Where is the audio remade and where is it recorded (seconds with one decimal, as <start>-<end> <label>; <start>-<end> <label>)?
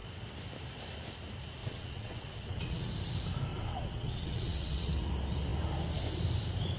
0.0-1.6 recorded; 1.6-2.9 remade; 2.9-3.5 recorded; 3.5-5.1 remade; 5.1-6.8 recorded